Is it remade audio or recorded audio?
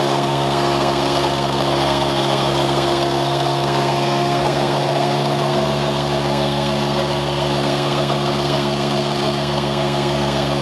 remade